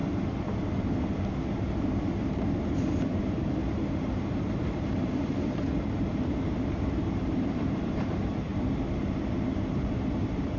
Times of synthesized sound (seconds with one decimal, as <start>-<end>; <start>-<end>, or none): 3.1-8.5; 9.0-10.6